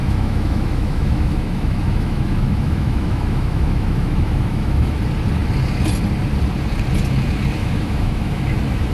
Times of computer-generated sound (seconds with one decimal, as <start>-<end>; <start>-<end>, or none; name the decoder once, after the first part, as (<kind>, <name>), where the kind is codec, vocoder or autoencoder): 0.0-5.0 (autoencoder, DAC-VAE); 7.6-8.4